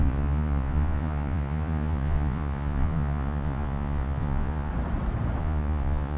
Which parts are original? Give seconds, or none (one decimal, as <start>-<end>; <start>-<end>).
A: 4.7-5.4